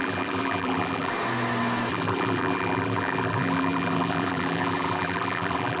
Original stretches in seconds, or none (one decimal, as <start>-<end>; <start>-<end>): 1.1-1.9